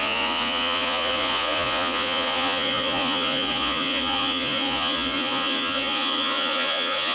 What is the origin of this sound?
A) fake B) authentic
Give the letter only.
A